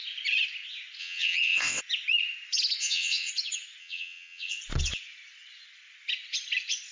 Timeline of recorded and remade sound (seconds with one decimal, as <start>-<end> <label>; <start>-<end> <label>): 0.0-1.0 recorded; 1.0-1.8 remade; 1.8-2.8 recorded; 2.8-3.3 remade; 3.3-3.8 recorded; 3.8-4.6 remade; 4.6-6.9 recorded